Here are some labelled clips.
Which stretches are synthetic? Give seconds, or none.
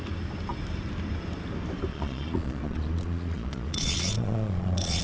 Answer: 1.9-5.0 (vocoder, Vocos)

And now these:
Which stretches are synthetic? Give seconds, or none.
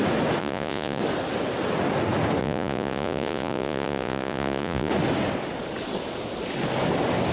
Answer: 0.4-1.0 (vocoder, Vocos); 2.4-4.9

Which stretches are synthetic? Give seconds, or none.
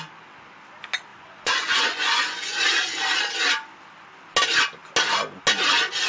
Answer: 1.1-2.6 (vocoder, Vocos)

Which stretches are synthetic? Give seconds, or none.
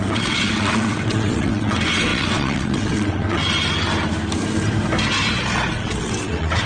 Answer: 0.0-3.4 (vocoder, WaveNeXt); 5.7-6.7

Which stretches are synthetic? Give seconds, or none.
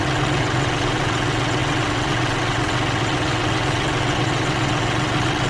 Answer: 0.0-5.5 (vocoder, WaveNeXt)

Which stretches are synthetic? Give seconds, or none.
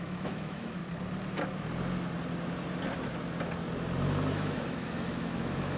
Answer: 0.0-0.8 (autoencoder, DAC-VAE); 4.3-5.8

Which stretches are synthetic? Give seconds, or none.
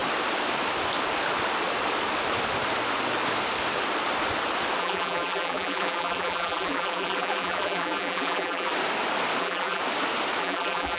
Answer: 4.8-8.7 (vocoder, BigVGAN v2); 9.4-9.8; 10.4-11.0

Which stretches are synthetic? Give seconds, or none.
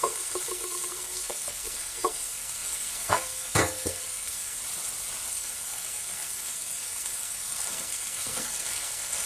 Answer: 0.0-4.6 (codec, SNAC); 5.3-9.3